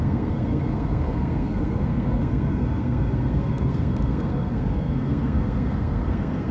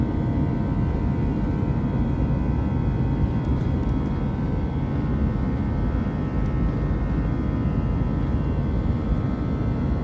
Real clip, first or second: second